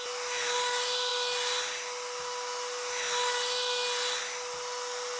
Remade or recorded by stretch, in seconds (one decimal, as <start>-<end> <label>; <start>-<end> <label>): 0.0-5.2 recorded